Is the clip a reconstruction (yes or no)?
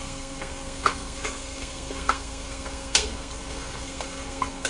yes